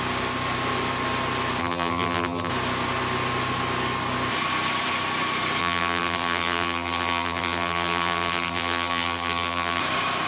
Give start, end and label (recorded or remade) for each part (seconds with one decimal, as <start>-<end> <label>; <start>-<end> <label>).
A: 0.0-1.6 recorded; 1.6-2.5 remade; 2.5-5.6 recorded; 5.6-9.8 remade; 9.8-10.3 recorded